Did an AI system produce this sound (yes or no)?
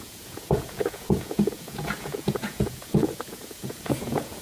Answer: yes